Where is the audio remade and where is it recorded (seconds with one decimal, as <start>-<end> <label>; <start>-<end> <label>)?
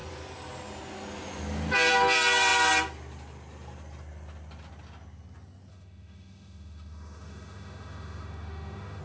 0.0-5.7 recorded; 5.7-9.0 remade